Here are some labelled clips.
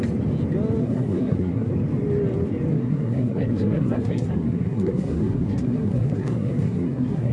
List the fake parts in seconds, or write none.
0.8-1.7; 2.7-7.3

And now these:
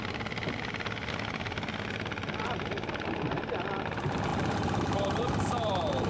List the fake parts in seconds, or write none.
4.3-6.1

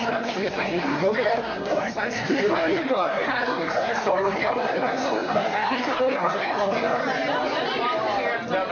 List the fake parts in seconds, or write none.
0.0-7.0

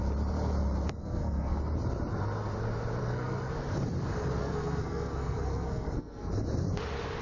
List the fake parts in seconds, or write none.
1.0-1.6; 3.0-3.5; 4.4-6.3

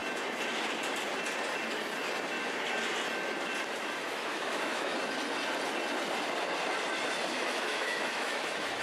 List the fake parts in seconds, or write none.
4.1-4.9; 7.3-8.8

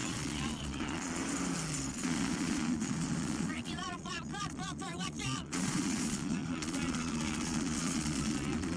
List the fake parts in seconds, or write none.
0.0-1.2; 1.9-8.8

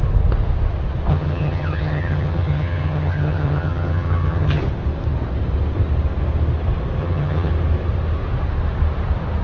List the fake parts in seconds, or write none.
1.1-4.6; 7.0-7.5

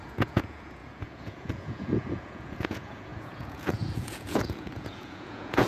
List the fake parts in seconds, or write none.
0.0-5.7